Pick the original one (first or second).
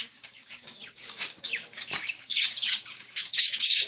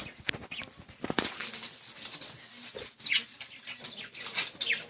second